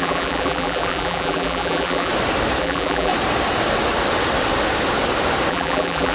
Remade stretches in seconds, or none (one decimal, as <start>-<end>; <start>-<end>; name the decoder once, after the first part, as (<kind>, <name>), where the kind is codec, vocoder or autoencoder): 0.0-2.1 (vocoder, BigVGAN v2); 2.6-3.1; 5.5-6.1